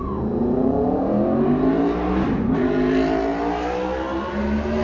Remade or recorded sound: recorded